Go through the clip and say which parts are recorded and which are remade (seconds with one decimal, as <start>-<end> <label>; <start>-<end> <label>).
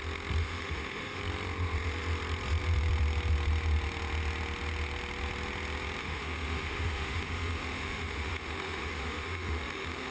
0.0-0.4 recorded; 0.4-1.2 remade; 1.2-6.0 recorded; 6.0-10.1 remade